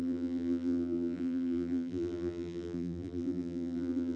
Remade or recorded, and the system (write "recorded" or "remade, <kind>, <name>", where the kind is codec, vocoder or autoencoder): remade, vocoder, BigVGAN v2